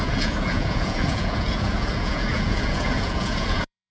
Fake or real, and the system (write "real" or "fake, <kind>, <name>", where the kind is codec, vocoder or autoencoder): fake, vocoder, Vocos